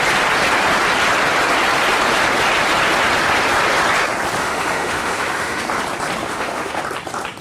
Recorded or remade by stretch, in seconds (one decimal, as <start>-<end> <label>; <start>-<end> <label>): 0.0-4.4 recorded; 4.4-5.6 remade; 5.6-6.2 recorded; 6.2-6.8 remade; 6.8-7.4 recorded